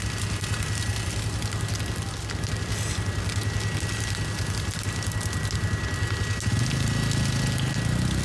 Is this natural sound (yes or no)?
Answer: yes